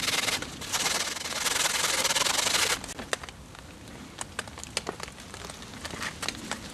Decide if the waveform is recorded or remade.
recorded